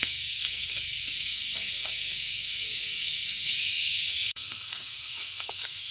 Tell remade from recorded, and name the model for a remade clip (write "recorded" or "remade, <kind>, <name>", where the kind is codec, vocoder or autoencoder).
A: remade, codec, SNAC